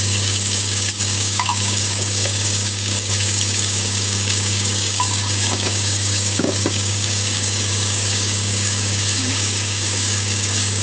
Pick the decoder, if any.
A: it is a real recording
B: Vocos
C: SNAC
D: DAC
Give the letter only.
D